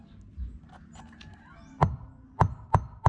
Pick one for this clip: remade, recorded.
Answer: recorded